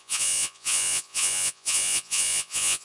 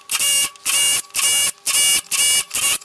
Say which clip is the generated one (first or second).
first